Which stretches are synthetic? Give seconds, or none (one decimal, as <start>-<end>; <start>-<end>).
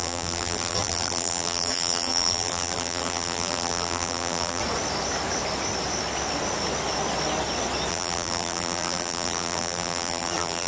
0.0-4.6; 7.9-10.7